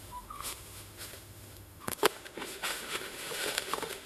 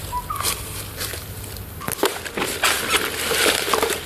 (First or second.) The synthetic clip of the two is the first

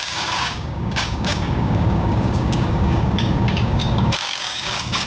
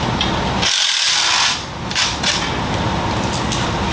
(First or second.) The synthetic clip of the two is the first